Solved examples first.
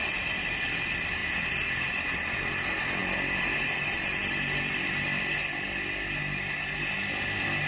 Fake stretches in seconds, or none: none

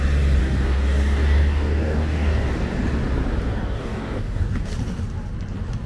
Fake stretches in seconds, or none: 0.4-2.5; 3.5-4.7

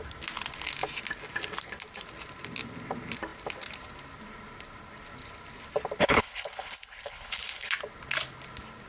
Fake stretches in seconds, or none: 6.0-7.7

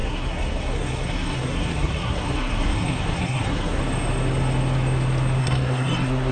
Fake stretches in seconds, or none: 0.0-3.8; 5.4-6.3

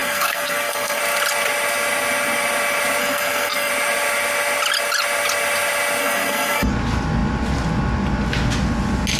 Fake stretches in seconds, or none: 0.0-1.0; 3.0-3.7; 6.0-6.7

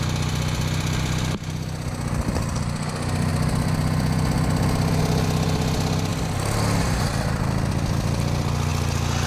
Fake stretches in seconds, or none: none

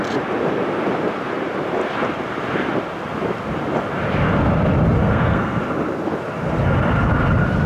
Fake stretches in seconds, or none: 5.0-5.6